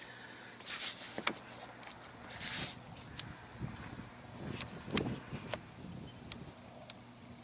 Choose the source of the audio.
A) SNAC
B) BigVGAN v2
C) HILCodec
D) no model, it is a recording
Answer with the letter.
D